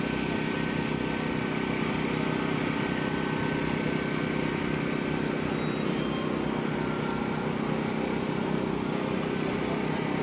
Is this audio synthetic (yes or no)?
no